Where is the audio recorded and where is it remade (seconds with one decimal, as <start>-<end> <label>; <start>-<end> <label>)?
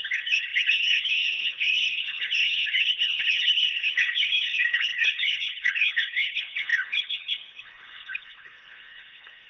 0.0-9.5 remade